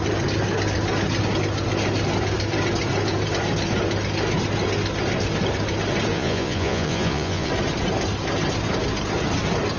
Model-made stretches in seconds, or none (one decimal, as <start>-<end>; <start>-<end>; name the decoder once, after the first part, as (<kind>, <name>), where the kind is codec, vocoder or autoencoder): 6.1-7.5 (vocoder, Vocos)